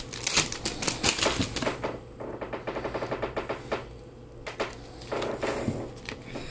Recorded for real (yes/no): yes